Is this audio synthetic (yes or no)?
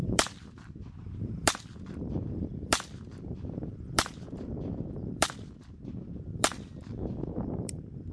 yes